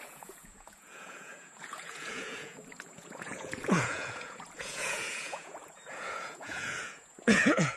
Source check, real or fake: fake